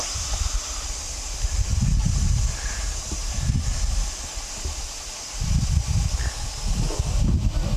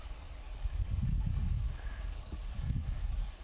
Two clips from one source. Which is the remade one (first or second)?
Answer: second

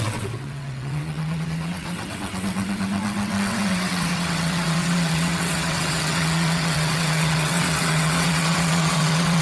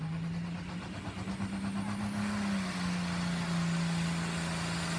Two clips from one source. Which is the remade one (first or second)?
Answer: first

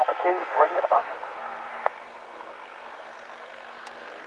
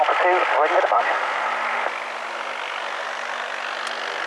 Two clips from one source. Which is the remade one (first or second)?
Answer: first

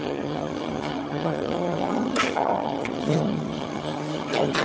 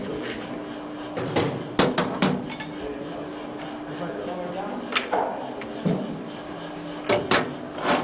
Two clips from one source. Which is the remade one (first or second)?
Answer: first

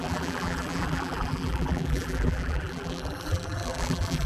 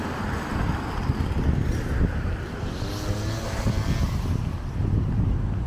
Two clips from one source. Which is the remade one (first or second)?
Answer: first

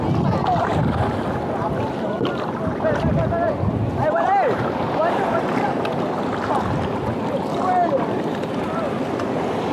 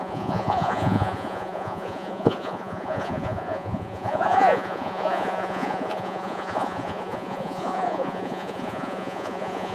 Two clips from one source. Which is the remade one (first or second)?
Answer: second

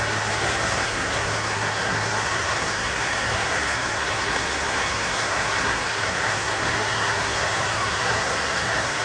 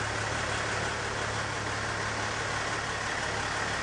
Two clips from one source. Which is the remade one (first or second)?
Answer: first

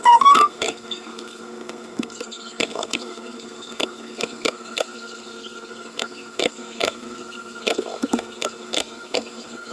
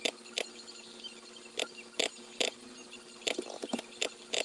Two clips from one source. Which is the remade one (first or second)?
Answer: first